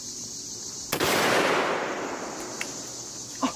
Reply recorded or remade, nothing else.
recorded